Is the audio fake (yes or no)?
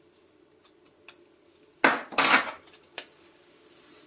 no